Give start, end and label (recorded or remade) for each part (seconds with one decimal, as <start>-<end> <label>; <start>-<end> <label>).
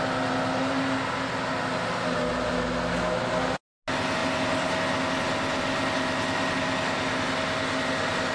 0.0-8.3 recorded